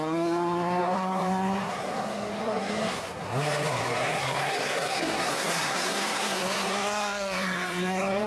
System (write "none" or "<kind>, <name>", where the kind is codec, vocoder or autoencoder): codec, SNAC